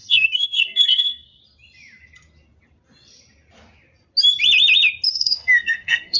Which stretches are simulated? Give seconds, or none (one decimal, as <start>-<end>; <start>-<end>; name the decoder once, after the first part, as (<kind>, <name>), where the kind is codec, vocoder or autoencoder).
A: 0.0-1.4 (codec, SNAC); 5.1-6.2